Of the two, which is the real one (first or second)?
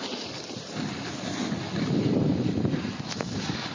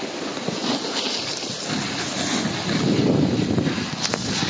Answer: second